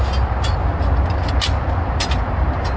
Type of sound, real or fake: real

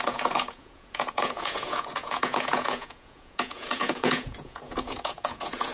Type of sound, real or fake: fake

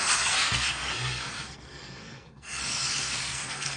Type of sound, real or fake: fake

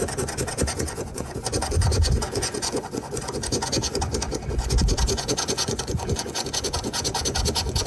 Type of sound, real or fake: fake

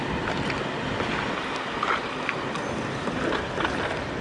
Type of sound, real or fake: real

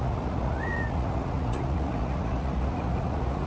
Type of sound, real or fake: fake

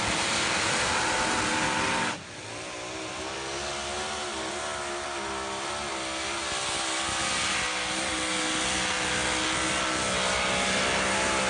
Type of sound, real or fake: real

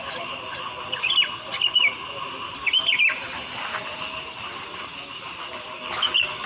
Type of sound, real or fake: real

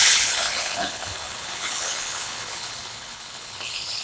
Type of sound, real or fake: fake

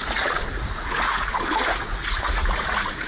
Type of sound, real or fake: fake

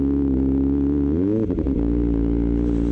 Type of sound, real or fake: real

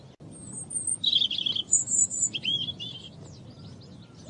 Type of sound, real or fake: real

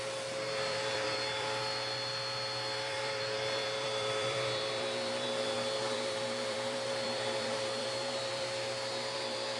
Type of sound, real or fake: fake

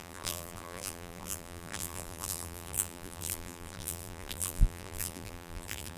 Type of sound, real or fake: fake